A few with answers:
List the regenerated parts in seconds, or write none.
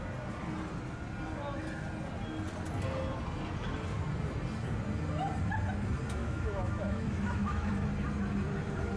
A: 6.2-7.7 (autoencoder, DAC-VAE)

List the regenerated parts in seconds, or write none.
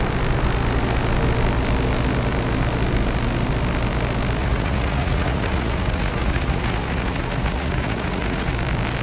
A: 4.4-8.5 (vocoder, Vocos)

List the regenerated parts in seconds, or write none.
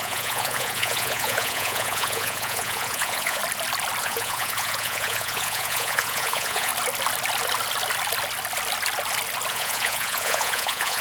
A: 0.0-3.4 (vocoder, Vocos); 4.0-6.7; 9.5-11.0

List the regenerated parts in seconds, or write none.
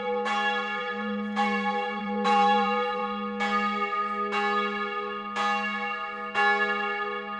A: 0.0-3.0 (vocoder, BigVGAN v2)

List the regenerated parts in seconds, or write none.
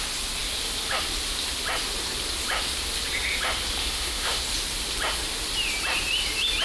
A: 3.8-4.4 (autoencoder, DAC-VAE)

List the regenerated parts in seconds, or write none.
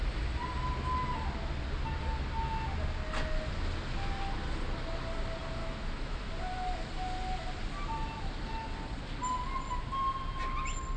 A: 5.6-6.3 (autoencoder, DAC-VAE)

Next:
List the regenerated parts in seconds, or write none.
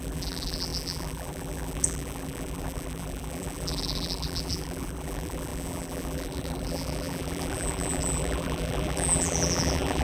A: 0.0-10.0 (vocoder, BigVGAN v2)